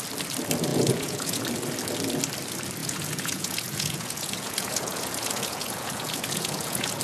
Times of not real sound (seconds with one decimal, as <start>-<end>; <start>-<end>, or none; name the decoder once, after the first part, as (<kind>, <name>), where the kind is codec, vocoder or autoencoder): 0.7-1.4 (vocoder, Vocos); 2.8-7.0